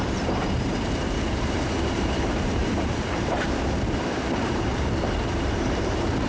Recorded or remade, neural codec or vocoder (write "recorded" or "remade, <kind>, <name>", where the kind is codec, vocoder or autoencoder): remade, vocoder, BigVGAN v2